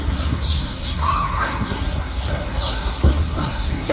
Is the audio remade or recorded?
remade